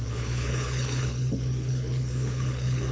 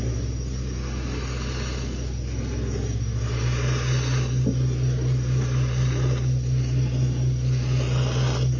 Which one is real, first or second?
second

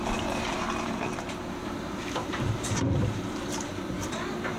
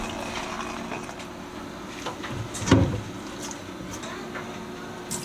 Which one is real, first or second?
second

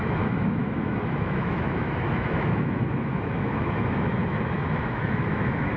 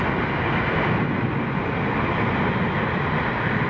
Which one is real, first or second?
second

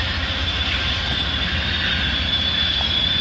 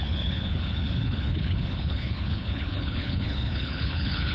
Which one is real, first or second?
first